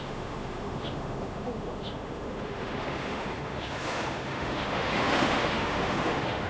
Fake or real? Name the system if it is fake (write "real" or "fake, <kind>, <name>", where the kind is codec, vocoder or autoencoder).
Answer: fake, autoencoder, DAC-VAE